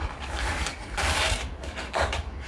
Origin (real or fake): fake